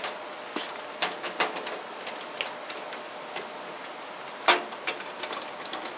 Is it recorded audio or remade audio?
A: recorded